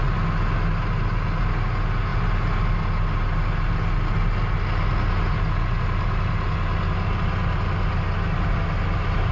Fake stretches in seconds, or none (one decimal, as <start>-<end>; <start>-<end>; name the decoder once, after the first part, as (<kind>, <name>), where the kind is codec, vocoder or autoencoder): none